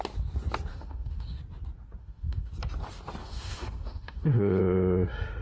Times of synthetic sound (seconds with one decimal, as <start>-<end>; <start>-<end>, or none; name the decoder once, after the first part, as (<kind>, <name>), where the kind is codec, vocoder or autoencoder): 0.7-1.4 (autoencoder, DAC-VAE); 2.0-2.5; 3.2-4.6